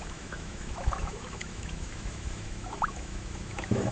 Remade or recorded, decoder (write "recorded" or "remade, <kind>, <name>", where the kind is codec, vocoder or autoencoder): remade, autoencoder, DAC-VAE